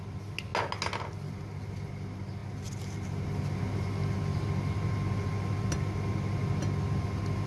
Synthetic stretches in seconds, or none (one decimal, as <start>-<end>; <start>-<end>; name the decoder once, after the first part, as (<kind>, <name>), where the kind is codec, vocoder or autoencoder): none